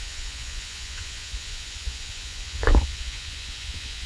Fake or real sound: fake